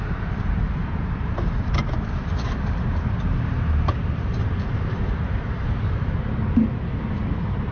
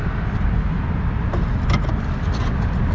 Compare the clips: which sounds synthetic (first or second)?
first